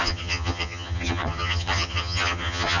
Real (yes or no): no